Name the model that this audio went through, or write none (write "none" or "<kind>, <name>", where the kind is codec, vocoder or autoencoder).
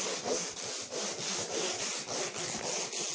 none